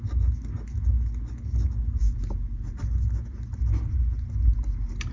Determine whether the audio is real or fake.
real